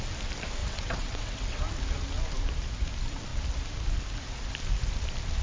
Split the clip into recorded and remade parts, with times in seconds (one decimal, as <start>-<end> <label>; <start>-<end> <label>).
0.0-0.6 recorded; 0.6-1.6 remade; 1.6-5.4 recorded